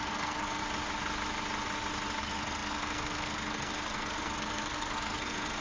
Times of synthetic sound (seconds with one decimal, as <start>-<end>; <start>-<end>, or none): 0.0-0.6; 2.2-5.6